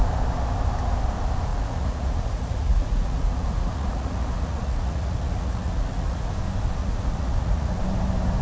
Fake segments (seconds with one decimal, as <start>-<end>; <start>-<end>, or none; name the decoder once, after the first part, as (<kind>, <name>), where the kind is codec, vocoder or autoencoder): 1.5-6.3 (vocoder, Vocos); 6.8-7.8